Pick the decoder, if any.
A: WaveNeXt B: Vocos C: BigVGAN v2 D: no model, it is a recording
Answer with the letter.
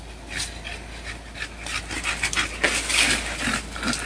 D